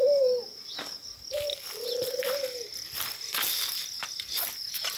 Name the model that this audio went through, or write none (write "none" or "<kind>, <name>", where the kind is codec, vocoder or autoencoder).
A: vocoder, BigVGAN v2